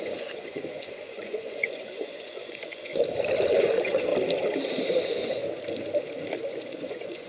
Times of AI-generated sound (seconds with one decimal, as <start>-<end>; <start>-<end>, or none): 0.0-2.9; 3.5-4.1; 5.0-5.4; 6.6-7.3